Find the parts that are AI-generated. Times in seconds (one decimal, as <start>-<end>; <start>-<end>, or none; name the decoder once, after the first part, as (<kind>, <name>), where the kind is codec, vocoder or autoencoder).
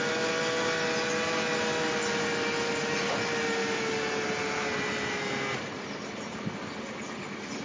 none